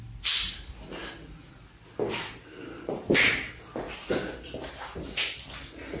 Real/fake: real